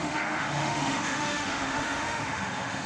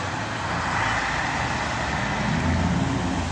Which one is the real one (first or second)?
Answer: second